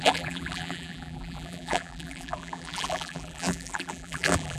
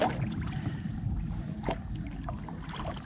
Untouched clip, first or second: second